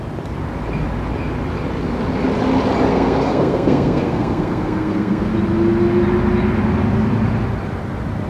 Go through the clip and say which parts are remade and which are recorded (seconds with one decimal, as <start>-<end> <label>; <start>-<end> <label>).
0.0-2.9 recorded; 2.9-5.3 remade; 5.3-8.3 recorded